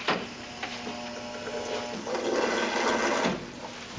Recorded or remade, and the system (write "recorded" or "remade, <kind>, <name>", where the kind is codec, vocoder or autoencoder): recorded